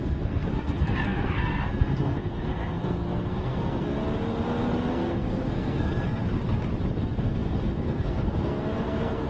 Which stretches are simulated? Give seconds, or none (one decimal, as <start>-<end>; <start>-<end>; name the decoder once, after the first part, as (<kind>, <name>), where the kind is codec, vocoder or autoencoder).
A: 0.0-4.0 (codec, SNAC); 4.9-6.2; 7.0-9.3